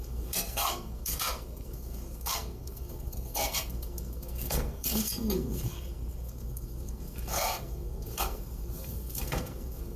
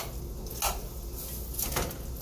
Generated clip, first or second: first